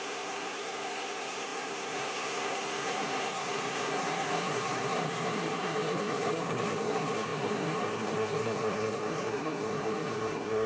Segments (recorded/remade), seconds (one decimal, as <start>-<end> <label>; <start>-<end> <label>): 0.0-10.7 remade